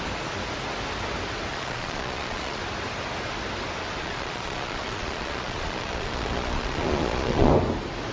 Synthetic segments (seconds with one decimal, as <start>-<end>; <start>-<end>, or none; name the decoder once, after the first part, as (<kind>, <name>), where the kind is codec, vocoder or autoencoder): 1.5-2.6 (vocoder, Vocos); 4.0-7.5